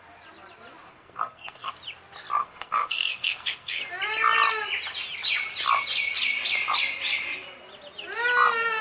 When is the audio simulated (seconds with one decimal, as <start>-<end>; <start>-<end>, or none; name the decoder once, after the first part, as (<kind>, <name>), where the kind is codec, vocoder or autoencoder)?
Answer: 0.9-1.7 (codec, SNAC); 2.4-3.8